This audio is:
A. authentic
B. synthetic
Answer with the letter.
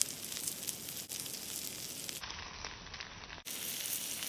A